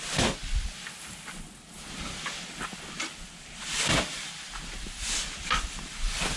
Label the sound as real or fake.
real